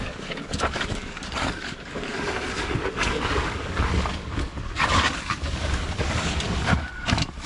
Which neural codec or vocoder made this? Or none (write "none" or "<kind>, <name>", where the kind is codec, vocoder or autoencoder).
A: codec, DAC